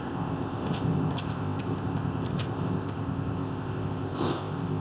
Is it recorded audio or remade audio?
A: remade